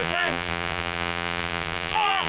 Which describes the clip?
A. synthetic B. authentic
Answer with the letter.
A